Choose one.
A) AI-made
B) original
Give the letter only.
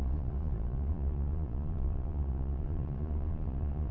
A